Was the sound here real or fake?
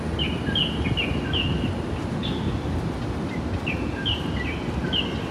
real